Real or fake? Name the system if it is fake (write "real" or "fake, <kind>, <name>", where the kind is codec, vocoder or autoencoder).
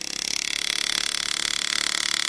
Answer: real